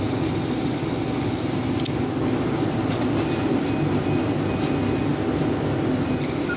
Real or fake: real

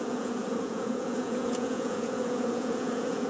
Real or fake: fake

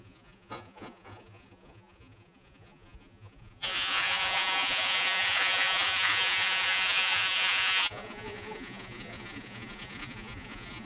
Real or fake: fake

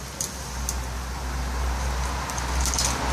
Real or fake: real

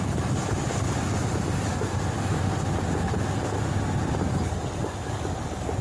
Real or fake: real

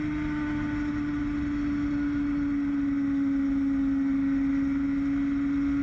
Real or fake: real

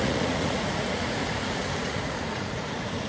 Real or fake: fake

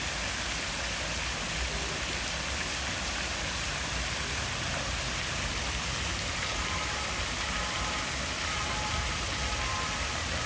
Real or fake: real